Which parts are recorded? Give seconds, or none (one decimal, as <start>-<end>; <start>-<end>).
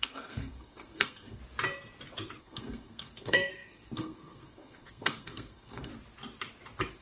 1.4-2.4; 5.9-7.0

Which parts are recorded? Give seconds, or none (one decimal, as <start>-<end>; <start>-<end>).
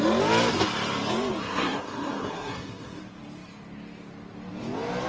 0.0-1.4; 3.0-5.1